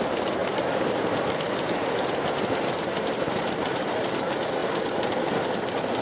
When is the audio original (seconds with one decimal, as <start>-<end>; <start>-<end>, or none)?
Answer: 0.0-6.0